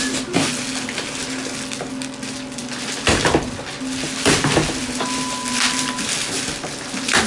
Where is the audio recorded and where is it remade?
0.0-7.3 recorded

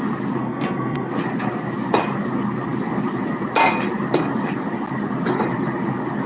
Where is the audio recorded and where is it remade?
0.0-0.4 recorded; 0.4-1.1 remade; 1.1-6.3 recorded